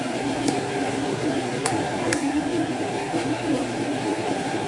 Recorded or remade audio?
remade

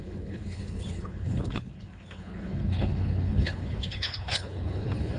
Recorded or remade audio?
remade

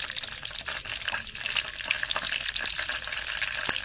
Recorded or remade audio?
remade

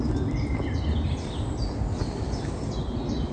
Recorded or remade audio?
recorded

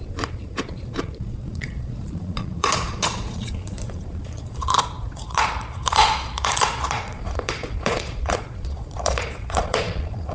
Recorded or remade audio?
remade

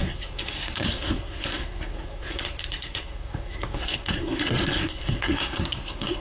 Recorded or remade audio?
remade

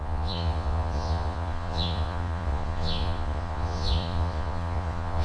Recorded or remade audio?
remade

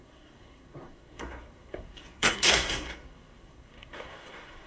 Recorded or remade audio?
remade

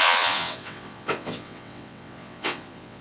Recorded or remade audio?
remade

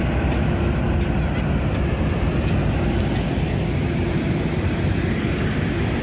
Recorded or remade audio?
recorded